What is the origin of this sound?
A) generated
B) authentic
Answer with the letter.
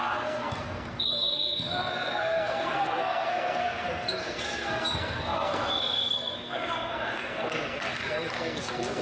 A